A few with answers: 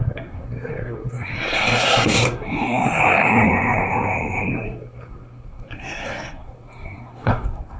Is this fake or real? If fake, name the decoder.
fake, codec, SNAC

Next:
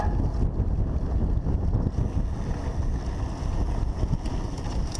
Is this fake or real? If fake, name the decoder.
real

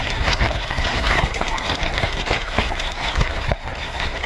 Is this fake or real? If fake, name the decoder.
fake, codec, SNAC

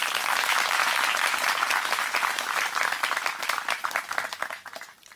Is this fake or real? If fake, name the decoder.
real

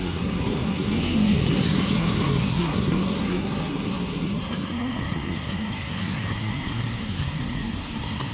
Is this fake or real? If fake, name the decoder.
fake, codec, SNAC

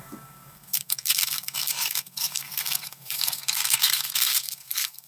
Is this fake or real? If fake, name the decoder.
fake, codec, SNAC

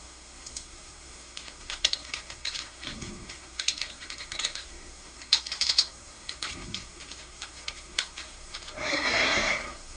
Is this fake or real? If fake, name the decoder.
fake, codec, SNAC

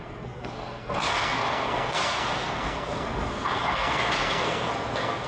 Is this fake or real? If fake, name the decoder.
fake, codec, SNAC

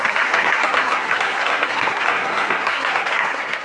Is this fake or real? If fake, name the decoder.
fake, codec, SNAC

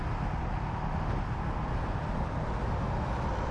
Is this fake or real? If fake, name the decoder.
real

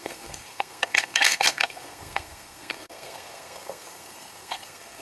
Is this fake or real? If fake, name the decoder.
fake, codec, SNAC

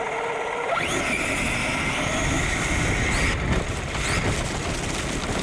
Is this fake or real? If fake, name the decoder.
real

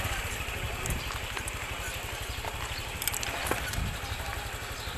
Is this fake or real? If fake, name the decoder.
real